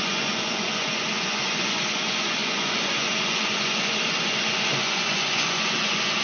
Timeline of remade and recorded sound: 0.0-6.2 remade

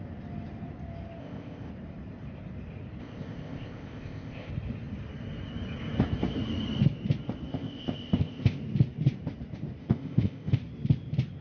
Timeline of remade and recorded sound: 0.0-1.2 recorded; 1.2-1.7 remade; 1.7-3.0 recorded; 3.0-4.5 remade; 4.5-7.5 recorded; 7.5-8.6 remade; 8.6-9.8 recorded; 9.8-10.6 remade; 10.6-11.4 recorded

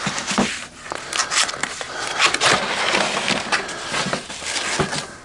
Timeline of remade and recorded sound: 0.0-5.2 recorded

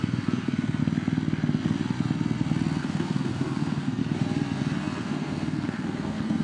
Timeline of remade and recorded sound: 0.0-0.8 remade; 0.8-2.8 recorded; 2.8-4.0 remade; 4.0-5.0 recorded; 5.0-6.4 remade

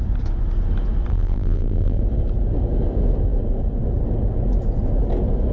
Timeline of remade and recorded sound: 0.0-1.1 recorded; 1.1-2.0 remade; 2.0-5.5 recorded